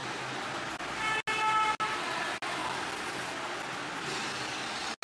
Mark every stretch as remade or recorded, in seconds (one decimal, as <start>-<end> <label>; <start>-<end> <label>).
0.0-5.0 recorded